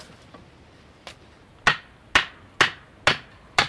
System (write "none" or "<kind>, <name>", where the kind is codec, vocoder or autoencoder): none